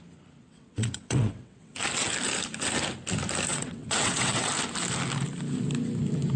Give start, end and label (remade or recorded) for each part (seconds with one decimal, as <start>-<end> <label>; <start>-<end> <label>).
0.0-0.4 recorded; 0.4-1.7 remade; 1.7-3.5 recorded; 3.5-4.5 remade; 4.5-6.4 recorded